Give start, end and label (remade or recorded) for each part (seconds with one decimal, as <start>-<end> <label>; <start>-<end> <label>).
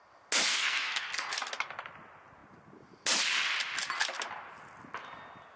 0.0-0.5 recorded; 0.5-1.3 remade; 1.3-5.6 recorded